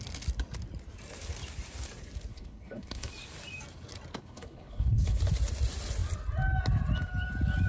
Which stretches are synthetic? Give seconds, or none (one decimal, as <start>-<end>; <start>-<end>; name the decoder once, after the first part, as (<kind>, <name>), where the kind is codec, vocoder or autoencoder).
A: 2.3-3.1 (codec, HILCodec); 4.2-5.2